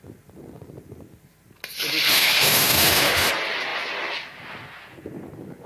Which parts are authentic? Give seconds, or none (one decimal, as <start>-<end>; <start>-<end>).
0.0-2.1; 3.3-5.7